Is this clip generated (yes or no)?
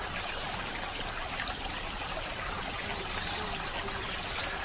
no